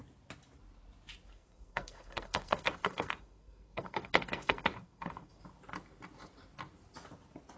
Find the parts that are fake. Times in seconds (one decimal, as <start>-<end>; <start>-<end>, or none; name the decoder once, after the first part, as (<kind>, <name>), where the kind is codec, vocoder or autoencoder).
1.3-5.4 (codec, SNAC)